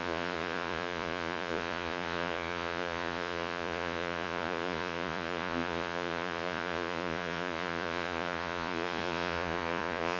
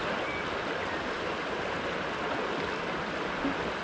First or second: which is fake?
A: first